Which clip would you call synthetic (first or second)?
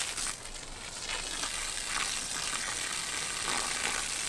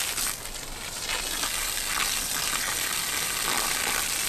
second